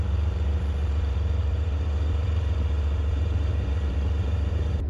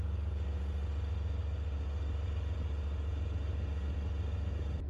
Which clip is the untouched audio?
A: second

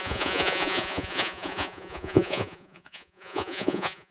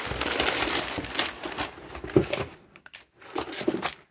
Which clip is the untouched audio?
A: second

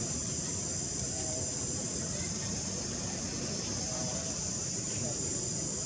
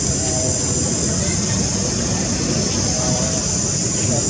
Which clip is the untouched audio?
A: second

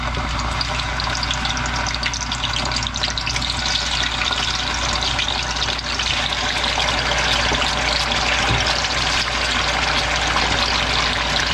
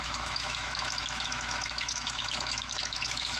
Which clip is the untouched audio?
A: first